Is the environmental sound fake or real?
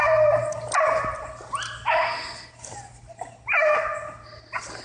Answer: real